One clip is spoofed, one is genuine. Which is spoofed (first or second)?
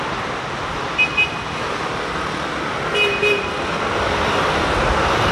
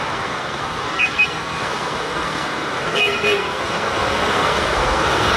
second